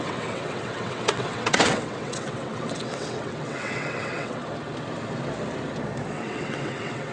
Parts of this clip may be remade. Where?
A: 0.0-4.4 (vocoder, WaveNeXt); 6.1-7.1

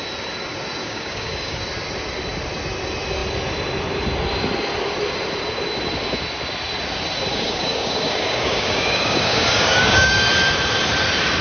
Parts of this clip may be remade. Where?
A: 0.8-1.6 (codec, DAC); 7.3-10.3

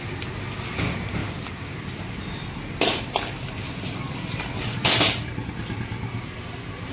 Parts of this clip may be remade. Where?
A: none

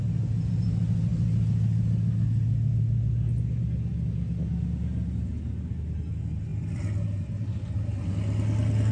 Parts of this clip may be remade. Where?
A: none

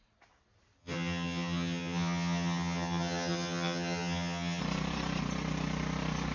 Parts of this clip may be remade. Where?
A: 0.8-4.6 (vocoder, HiFi-GAN)

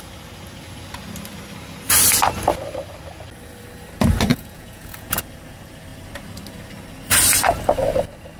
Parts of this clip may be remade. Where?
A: 4.3-5.2 (vocoder, Vocos)

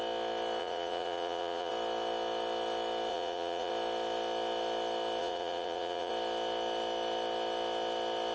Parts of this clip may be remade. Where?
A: 0.6-1.7 (vocoder, Vocos); 3.1-3.7; 5.2-6.1